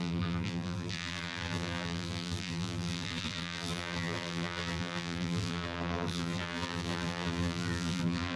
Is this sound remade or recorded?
remade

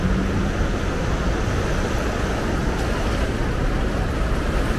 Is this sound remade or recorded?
recorded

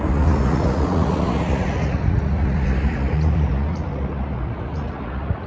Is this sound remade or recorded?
remade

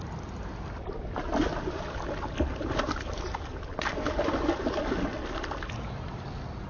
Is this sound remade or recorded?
recorded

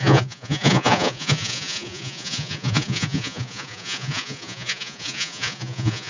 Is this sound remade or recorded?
remade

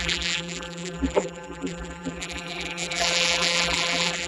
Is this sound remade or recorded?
remade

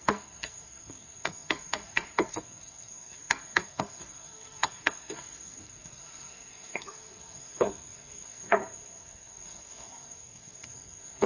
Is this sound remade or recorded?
remade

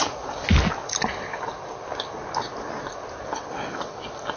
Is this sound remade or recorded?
recorded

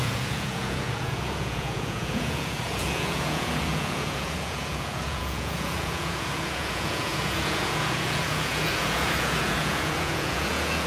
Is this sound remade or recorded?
remade